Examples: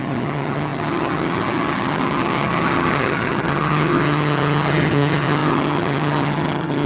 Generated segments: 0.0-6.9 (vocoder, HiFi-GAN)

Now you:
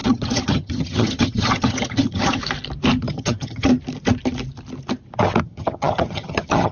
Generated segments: 0.0-2.4 (vocoder, HiFi-GAN); 3.0-3.7; 5.4-6.7

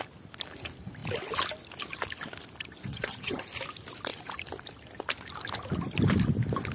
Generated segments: 2.9-3.4 (vocoder, HiFi-GAN)

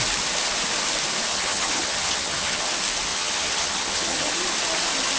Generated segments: 1.3-2.6 (vocoder, HiFi-GAN); 3.1-4.3

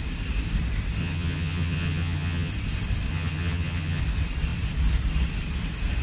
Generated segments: 1.0-2.5 (vocoder, HiFi-GAN); 3.1-4.0

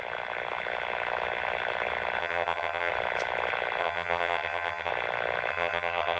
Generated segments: 2.2-2.9 (vocoder, HiFi-GAN); 3.8-4.9; 5.5-6.2

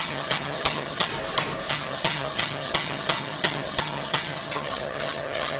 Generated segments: 0.0-1.1 (vocoder, HiFi-GAN); 1.7-5.6